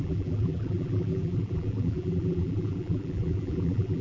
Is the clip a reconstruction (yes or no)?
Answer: yes